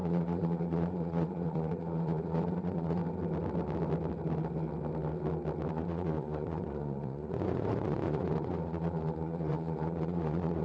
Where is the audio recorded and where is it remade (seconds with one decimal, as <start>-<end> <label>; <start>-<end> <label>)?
0.0-3.0 remade; 3.0-5.7 recorded; 5.7-10.6 remade